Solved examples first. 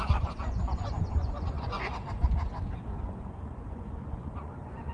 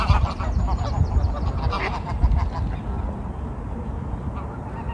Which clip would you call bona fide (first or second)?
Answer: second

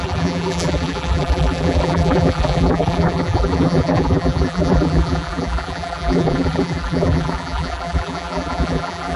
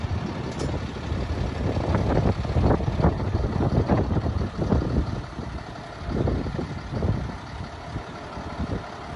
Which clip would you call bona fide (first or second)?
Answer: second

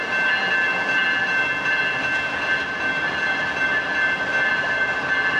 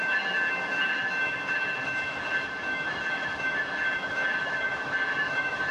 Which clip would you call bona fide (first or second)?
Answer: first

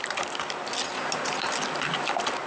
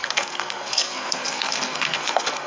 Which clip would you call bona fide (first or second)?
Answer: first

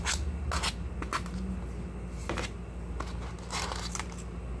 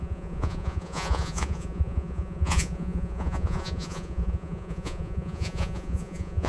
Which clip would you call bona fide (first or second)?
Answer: first